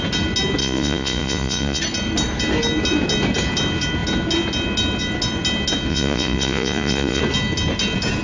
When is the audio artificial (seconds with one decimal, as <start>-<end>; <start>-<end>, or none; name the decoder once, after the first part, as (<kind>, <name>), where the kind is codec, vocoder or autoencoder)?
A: 0.6-1.8 (vocoder, Vocos); 5.9-7.2